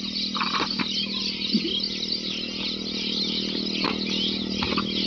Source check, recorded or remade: recorded